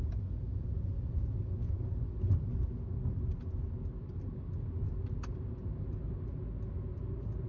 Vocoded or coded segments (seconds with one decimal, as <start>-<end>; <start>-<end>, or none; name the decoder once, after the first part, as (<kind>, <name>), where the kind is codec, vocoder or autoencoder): none